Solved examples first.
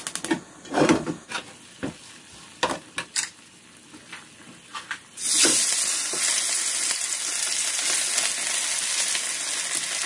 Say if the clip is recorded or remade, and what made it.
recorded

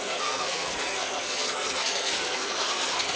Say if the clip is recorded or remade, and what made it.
remade, codec, SNAC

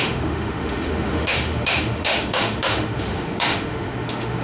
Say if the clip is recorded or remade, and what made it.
remade, autoencoder, DAC-VAE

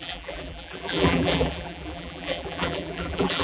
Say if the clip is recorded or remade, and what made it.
remade, vocoder, BigVGAN v2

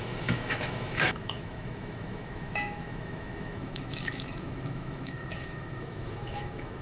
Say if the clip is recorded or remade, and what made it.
remade, autoencoder, DAC-VAE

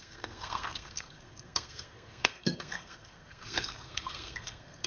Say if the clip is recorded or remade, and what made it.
remade, codec, SNAC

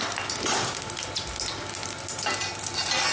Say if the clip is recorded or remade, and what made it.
recorded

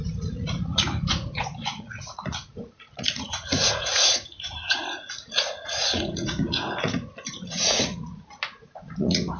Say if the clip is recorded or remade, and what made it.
remade, vocoder, Vocos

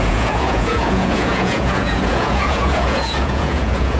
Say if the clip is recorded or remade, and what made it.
remade, vocoder, Vocos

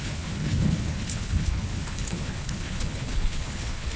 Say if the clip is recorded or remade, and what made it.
remade, codec, HILCodec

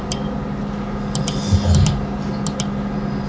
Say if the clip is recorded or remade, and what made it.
recorded